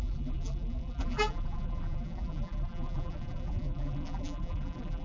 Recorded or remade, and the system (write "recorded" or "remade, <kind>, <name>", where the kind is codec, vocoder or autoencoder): remade, vocoder, BigVGAN v2